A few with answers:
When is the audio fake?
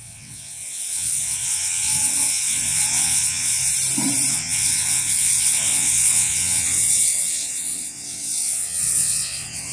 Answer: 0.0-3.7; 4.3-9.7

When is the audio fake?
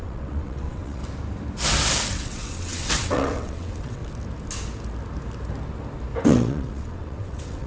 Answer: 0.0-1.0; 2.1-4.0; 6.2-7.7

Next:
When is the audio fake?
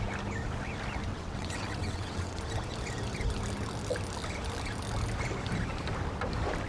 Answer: 1.1-2.4